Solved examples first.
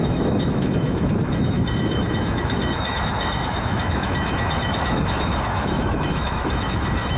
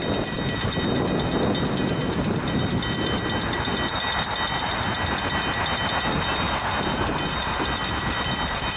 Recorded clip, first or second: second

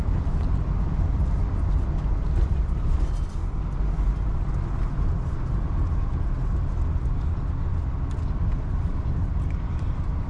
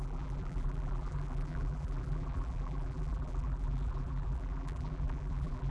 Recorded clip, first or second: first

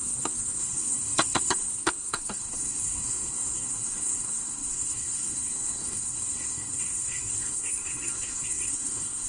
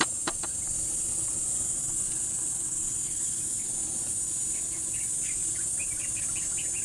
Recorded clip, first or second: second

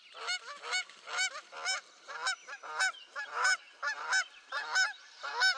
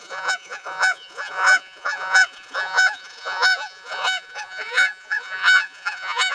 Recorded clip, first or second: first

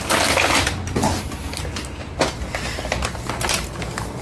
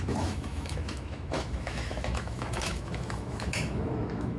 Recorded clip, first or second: first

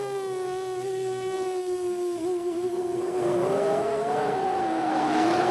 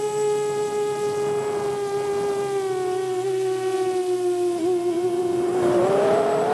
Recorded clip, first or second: second